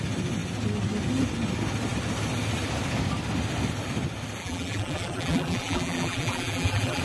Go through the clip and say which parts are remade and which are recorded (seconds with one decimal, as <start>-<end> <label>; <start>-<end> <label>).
0.0-4.4 recorded; 4.4-7.0 remade